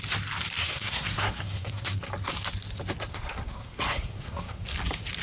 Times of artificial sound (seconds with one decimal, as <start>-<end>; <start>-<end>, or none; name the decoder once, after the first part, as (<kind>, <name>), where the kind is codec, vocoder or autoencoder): 0.6-2.0 (codec, SNAC); 3.1-4.6